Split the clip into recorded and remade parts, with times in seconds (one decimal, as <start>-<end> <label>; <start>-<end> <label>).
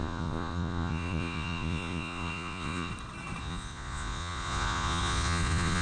0.0-2.9 remade; 2.9-3.4 recorded; 3.4-5.8 remade